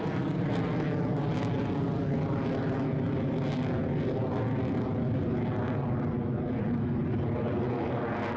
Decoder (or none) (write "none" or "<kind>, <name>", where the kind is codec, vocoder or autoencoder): none